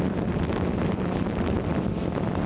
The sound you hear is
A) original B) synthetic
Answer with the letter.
B